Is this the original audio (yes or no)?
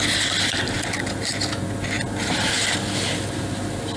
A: yes